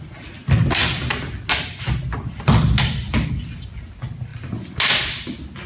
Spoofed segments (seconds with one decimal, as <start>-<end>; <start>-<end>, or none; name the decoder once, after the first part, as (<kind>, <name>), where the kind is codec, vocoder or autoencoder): none